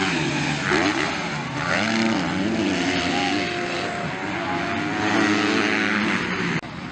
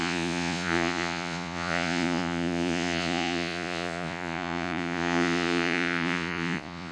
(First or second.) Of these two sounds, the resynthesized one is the second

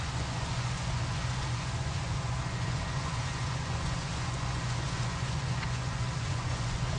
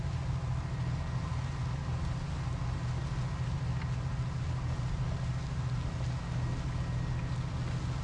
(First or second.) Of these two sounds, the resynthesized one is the first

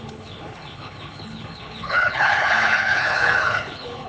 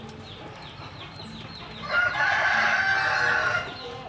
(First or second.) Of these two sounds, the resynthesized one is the first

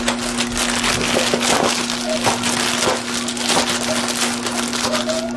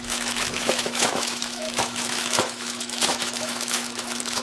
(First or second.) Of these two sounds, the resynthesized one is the second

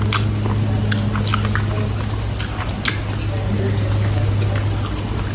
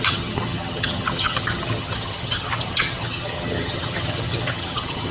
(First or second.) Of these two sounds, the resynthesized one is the second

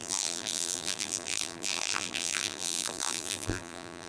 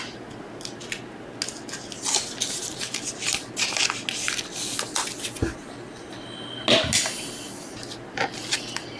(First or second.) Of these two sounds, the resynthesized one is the first